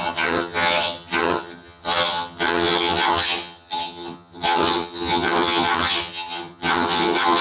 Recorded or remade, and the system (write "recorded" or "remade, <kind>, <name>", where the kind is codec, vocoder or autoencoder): remade, vocoder, HiFi-GAN